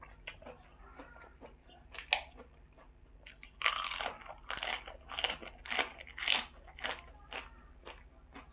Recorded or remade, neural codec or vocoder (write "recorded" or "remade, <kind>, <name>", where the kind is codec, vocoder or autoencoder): recorded